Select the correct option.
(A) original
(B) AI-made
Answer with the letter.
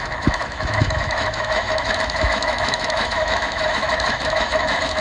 B